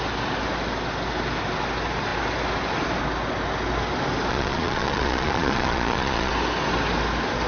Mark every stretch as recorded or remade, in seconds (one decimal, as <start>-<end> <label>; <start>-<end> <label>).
0.0-4.3 recorded; 4.3-6.3 remade; 6.3-7.5 recorded